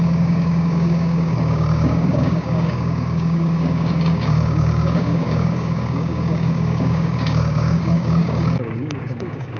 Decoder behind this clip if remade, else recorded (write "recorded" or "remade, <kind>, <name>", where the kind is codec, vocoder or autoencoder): remade, codec, DAC